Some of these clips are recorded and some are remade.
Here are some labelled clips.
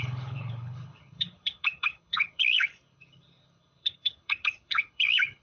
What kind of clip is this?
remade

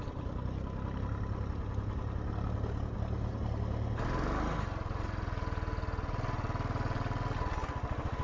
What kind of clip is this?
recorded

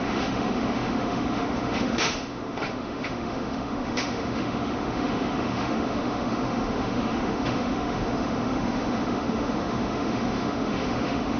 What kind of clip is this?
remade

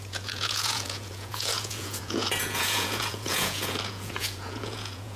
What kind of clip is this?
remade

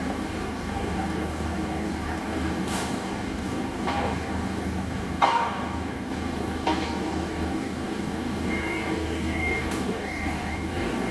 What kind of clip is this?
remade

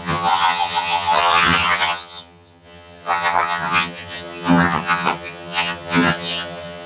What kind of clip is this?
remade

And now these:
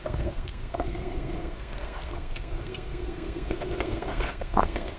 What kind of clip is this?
remade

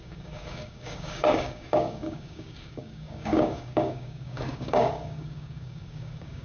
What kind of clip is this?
remade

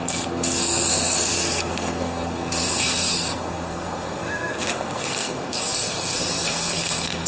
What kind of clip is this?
remade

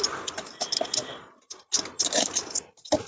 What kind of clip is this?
recorded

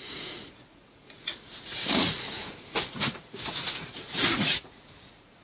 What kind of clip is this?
remade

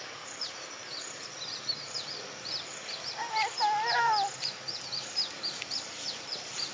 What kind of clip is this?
remade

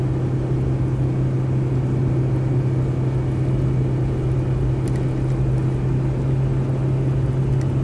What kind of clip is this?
recorded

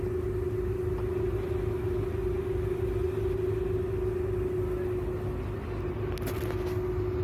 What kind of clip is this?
recorded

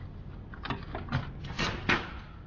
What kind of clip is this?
recorded